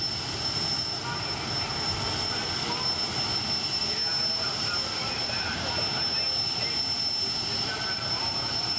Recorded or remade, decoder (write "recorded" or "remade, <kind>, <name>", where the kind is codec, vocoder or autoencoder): recorded